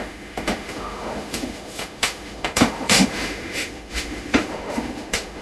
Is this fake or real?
fake